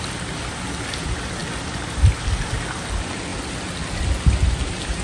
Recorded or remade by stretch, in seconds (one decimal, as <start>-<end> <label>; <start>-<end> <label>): 0.0-5.0 recorded